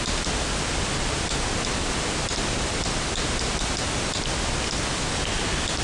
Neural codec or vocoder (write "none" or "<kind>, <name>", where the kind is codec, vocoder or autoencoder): none